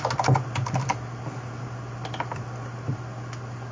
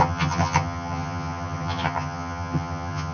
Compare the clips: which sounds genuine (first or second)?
first